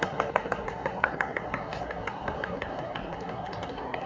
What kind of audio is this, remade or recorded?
remade